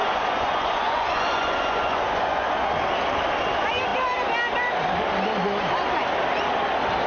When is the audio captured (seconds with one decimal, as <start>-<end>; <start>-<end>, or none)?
2.7-7.1